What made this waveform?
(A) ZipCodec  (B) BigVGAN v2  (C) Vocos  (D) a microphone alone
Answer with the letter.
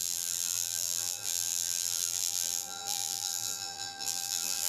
B